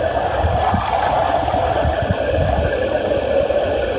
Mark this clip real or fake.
real